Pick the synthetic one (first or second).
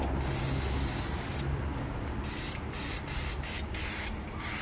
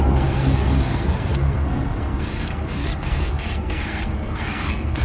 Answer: second